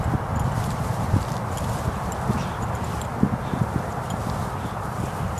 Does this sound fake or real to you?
fake